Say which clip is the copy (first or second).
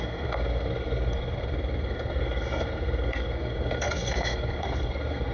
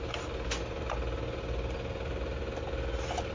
first